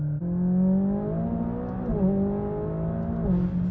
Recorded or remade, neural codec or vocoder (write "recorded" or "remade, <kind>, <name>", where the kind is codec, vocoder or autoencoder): recorded